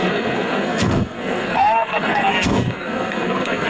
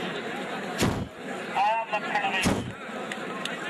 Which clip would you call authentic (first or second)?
second